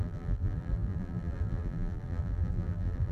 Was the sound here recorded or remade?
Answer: remade